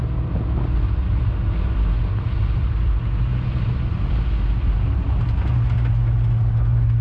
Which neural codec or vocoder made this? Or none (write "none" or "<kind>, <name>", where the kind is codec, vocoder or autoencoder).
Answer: none